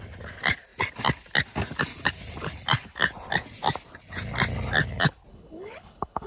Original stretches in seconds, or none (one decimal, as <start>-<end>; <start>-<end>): 0.0-5.3

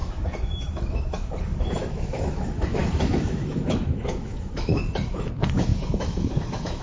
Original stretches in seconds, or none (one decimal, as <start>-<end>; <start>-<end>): none

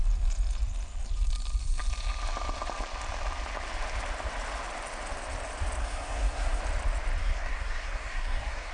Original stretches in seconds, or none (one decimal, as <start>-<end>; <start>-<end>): 0.0-5.8; 6.6-7.2

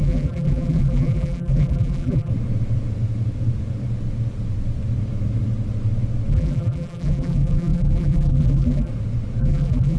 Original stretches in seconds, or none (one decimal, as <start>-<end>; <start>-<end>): 2.3-6.3; 8.9-9.4